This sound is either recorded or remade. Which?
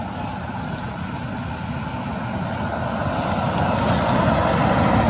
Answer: recorded